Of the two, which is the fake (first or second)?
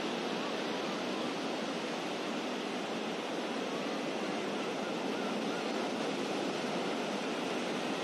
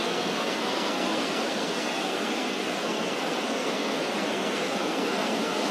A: second